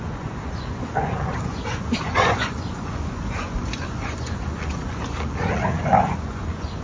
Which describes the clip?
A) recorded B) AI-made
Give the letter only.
B